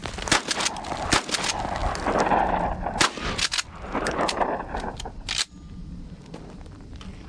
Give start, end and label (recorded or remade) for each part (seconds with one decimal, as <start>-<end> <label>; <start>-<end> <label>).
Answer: 0.0-7.3 recorded